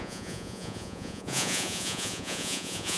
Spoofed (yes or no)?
yes